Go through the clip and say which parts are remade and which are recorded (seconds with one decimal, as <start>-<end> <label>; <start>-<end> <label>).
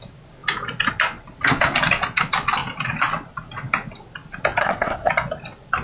0.0-4.6 recorded; 4.6-5.1 remade; 5.1-5.8 recorded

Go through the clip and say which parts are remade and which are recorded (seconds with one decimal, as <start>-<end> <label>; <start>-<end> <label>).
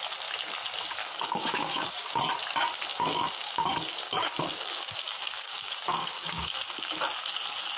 0.0-1.0 recorded; 1.0-2.2 remade; 2.2-2.9 recorded; 2.9-7.0 remade; 7.0-7.8 recorded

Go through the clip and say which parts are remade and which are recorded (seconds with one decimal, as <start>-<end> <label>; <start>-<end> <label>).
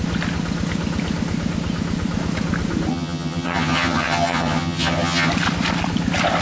0.0-2.9 recorded; 2.9-5.3 remade; 5.3-6.4 recorded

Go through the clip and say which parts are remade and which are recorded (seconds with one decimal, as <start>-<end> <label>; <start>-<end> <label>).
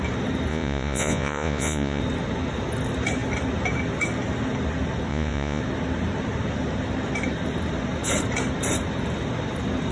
0.0-0.5 recorded; 0.5-2.0 remade; 2.0-5.1 recorded; 5.1-5.6 remade; 5.6-9.9 recorded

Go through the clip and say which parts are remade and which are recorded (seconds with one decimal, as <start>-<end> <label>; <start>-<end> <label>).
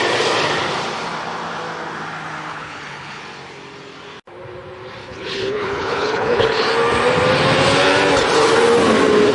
0.0-2.5 recorded; 2.5-3.2 remade; 3.2-5.0 recorded; 5.0-6.7 remade; 6.7-9.3 recorded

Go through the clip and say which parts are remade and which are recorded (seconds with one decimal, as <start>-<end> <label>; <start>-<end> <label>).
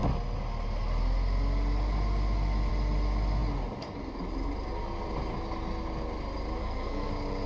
0.0-6.6 recorded; 6.6-7.1 remade; 7.1-7.5 recorded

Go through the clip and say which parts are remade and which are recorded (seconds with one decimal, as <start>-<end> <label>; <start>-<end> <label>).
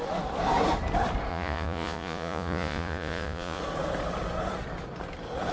0.0-1.3 recorded; 1.3-3.6 remade; 3.6-5.5 recorded